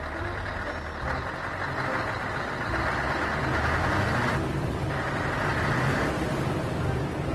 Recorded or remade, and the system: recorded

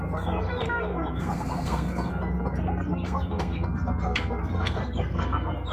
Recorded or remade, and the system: remade, codec, SNAC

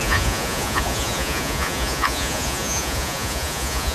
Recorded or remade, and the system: remade, vocoder, Vocos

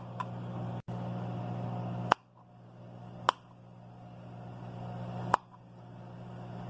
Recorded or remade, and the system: recorded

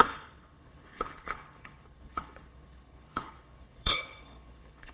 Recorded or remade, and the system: remade, codec, HILCodec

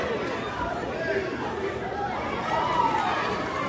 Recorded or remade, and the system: remade, vocoder, BigVGAN v2